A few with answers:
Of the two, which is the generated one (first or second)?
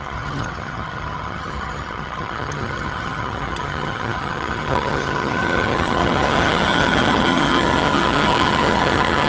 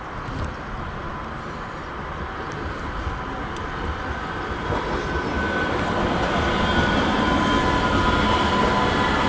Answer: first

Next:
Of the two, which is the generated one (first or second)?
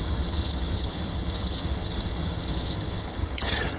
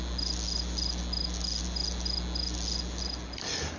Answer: first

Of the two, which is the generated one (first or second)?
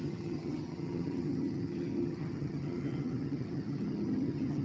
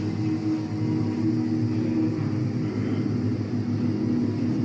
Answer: first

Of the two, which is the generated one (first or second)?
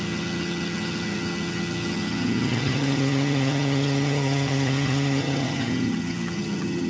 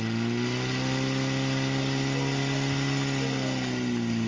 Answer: first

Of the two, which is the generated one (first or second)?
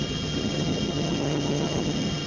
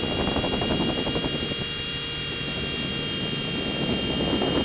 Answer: first